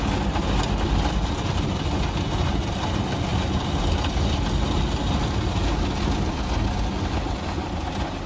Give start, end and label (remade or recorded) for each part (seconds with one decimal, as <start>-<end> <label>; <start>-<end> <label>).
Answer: 0.0-8.3 recorded